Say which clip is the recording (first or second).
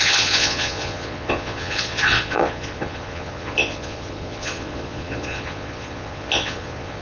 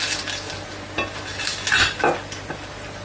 second